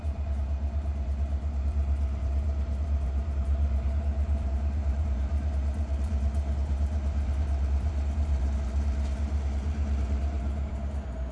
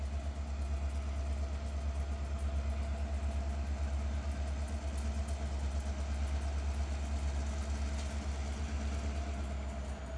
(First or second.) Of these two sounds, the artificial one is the first